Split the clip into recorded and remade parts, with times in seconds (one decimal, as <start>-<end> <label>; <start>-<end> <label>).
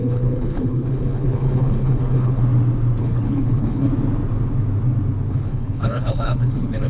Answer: 0.0-2.4 remade; 2.4-3.0 recorded; 3.0-3.9 remade; 3.9-5.3 recorded; 5.3-6.9 remade